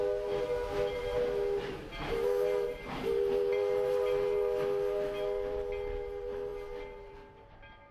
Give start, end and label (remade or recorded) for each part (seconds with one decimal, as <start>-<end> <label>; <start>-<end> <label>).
0.0-7.9 recorded